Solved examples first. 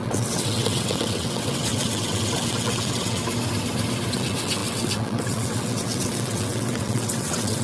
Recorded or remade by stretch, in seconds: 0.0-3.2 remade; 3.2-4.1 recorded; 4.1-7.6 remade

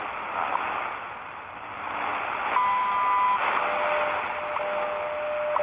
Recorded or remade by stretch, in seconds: 0.0-5.6 recorded

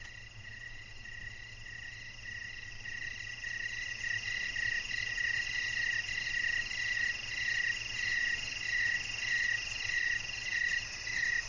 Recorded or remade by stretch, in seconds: 0.0-11.5 recorded

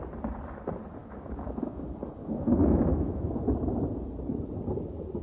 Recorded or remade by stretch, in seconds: 0.0-1.0 recorded; 1.0-1.8 remade; 1.8-2.2 recorded; 2.2-3.3 remade; 3.3-5.2 recorded

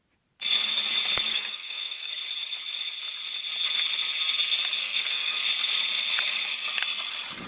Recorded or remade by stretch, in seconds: 0.0-1.3 recorded; 1.3-2.1 remade; 2.1-4.8 recorded; 4.8-5.4 remade; 5.4-7.5 recorded